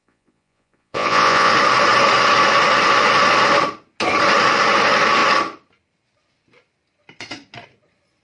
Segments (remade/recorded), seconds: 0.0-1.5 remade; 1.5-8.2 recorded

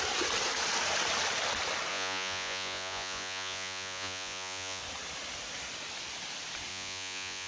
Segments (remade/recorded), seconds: 0.0-1.9 recorded; 1.9-4.8 remade; 4.8-6.7 recorded; 6.7-7.5 remade

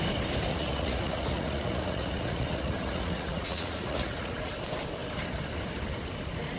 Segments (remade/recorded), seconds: 0.0-0.5 recorded; 0.5-4.5 remade; 4.5-6.6 recorded